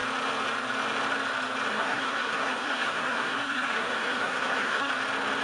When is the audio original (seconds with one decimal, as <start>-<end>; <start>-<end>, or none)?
0.0-1.7; 4.9-5.4